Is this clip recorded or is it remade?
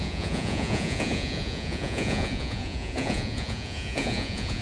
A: remade